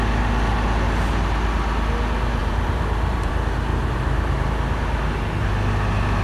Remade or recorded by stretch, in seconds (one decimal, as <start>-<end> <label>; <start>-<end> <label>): 0.0-2.4 recorded; 2.4-3.3 remade; 3.3-3.7 recorded; 3.7-4.5 remade; 4.5-6.2 recorded